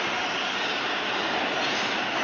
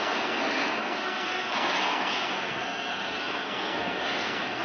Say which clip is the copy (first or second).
second